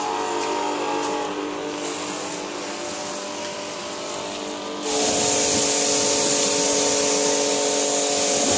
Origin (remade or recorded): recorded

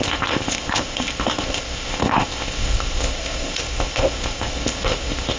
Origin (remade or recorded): remade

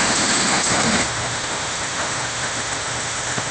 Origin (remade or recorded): remade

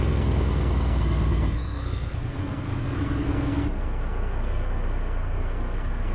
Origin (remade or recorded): remade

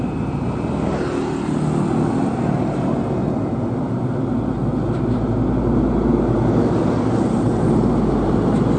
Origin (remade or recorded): recorded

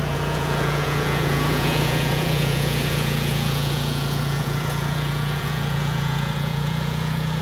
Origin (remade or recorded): remade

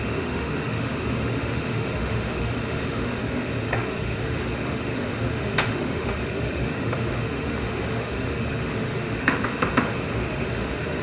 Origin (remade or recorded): remade